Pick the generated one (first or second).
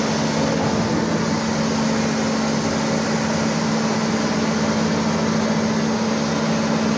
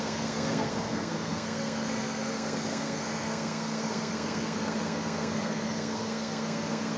second